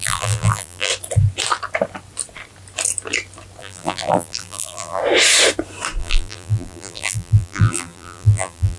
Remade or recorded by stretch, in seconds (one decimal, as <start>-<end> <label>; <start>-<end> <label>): 0.0-0.9 remade; 0.9-3.6 recorded; 3.6-5.0 remade; 5.0-6.0 recorded; 6.0-8.8 remade